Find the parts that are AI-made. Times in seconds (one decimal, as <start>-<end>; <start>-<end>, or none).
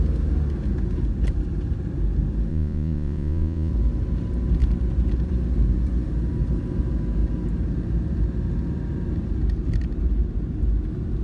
2.5-3.7